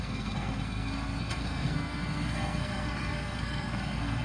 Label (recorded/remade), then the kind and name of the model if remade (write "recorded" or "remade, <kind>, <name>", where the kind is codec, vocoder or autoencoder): remade, codec, SNAC